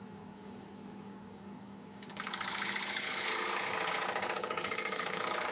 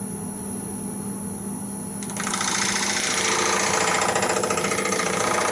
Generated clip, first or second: first